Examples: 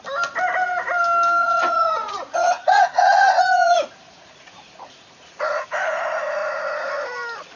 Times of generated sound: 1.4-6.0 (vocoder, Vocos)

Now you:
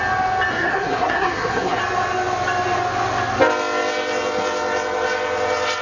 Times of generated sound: 0.5-1.8 (codec, SNAC)